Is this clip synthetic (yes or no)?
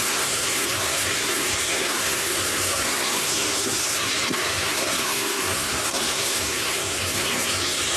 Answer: yes